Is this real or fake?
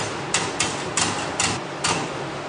real